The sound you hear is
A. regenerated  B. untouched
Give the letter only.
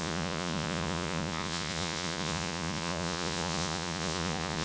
A